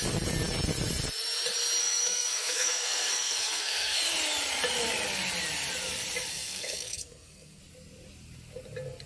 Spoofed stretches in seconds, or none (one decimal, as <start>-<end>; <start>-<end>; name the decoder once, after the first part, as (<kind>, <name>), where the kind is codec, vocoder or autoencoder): 1.8-4.0 (codec, SNAC); 6.3-7.6